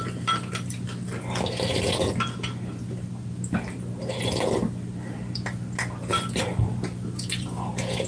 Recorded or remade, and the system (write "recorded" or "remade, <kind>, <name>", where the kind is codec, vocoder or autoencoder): recorded